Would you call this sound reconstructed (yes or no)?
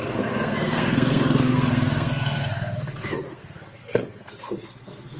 yes